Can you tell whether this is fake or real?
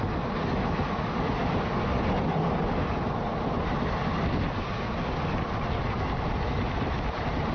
real